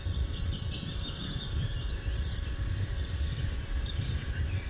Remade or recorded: recorded